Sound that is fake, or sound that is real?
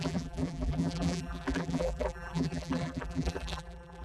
fake